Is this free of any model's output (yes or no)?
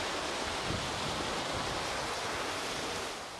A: yes